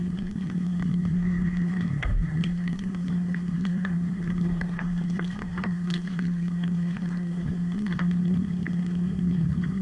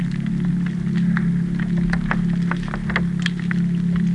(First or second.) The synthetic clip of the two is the first